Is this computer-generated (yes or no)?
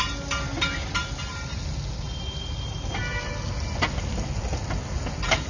no